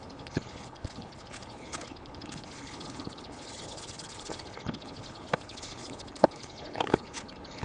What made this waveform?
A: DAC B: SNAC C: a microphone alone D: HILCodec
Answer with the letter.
D